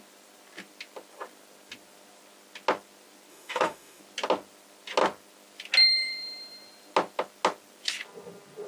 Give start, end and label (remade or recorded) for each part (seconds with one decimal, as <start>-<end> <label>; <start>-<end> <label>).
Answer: 0.0-3.3 recorded; 3.3-4.0 remade; 4.0-8.7 recorded